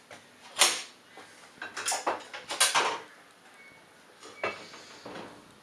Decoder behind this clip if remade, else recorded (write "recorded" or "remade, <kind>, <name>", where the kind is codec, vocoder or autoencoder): recorded